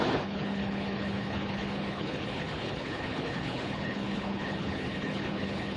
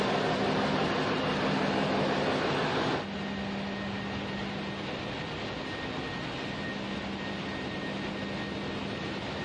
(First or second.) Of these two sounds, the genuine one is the second